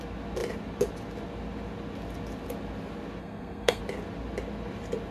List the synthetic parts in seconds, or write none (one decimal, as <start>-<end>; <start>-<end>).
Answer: 3.2-3.8